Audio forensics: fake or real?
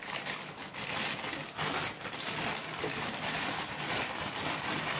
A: real